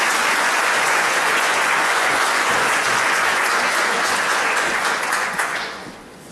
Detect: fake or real fake